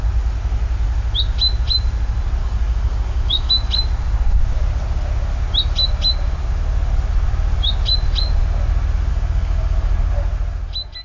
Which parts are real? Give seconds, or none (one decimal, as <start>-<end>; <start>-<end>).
0.0-2.4; 3.5-9.1; 10.1-11.0